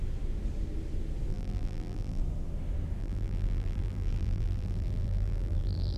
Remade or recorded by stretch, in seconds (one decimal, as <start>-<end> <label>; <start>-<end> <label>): 0.0-1.3 recorded; 1.3-2.2 remade; 2.2-3.0 recorded; 3.0-6.0 remade